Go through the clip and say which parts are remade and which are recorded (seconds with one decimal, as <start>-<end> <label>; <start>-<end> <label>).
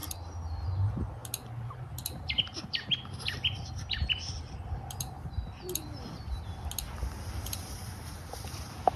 0.0-9.0 recorded